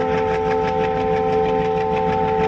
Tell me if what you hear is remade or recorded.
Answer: recorded